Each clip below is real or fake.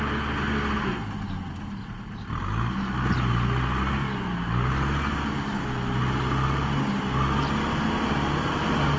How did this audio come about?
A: real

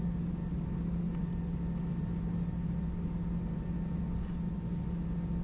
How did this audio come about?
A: real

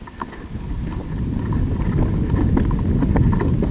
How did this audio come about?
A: real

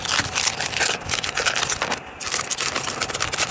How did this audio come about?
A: real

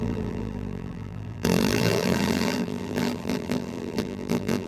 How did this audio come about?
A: fake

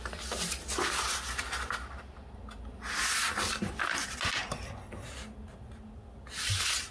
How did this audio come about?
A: real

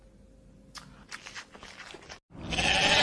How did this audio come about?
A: real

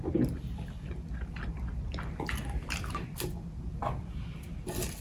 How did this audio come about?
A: real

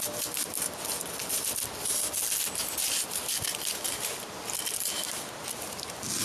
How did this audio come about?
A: real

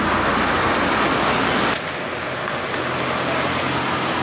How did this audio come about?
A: real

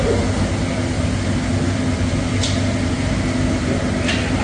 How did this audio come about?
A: real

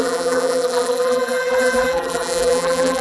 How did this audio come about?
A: fake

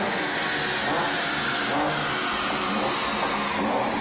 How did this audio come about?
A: real